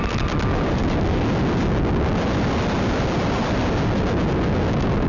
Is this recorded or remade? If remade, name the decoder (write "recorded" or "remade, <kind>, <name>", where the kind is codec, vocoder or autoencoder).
recorded